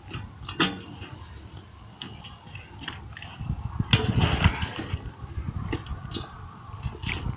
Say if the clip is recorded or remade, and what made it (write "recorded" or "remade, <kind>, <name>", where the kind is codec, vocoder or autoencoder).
recorded